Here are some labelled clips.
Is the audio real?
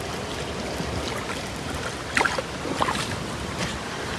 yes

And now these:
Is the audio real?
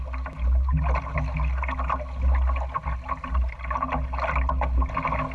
yes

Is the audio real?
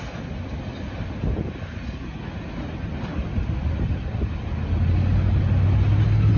yes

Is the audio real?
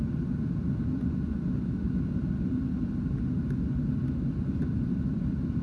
yes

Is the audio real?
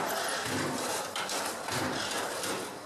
yes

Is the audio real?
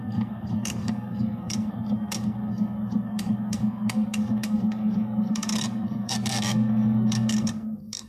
no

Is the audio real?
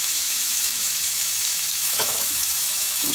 no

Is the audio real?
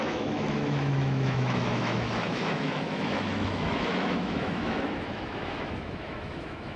no